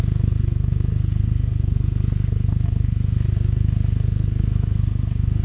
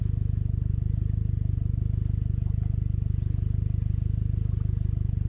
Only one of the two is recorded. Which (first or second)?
second